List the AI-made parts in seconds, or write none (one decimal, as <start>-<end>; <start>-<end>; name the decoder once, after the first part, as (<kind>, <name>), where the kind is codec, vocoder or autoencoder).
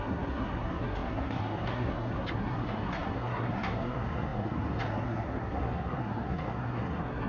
0.0-7.3 (codec, SNAC)